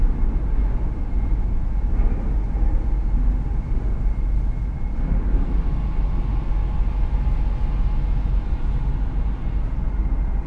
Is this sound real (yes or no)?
yes